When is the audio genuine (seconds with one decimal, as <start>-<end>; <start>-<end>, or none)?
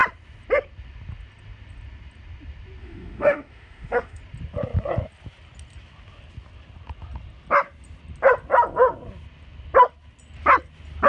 0.0-2.8; 4.2-11.1